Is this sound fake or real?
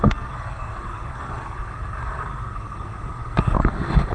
fake